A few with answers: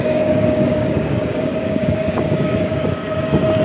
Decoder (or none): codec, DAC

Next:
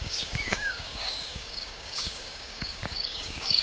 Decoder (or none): codec, DAC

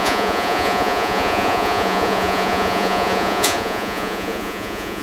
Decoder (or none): vocoder, Vocos